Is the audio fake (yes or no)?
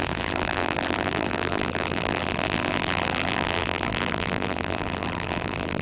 yes